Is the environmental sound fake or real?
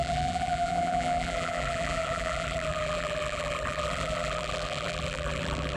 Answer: fake